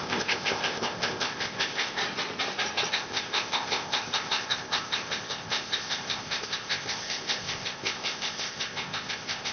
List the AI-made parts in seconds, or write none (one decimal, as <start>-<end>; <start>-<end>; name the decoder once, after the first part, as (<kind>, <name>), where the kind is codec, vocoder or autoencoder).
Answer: 0.0-2.0 (codec, ZipCodec); 2.9-9.5